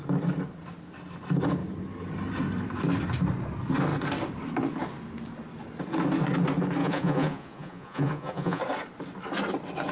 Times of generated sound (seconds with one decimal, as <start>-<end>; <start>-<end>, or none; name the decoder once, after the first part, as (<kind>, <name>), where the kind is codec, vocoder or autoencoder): 6.8-8.6 (vocoder, Vocos)